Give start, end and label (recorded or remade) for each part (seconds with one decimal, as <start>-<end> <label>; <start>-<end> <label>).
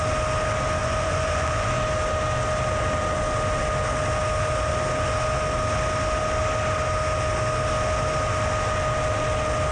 0.0-0.8 recorded; 0.8-1.8 remade; 1.8-9.7 recorded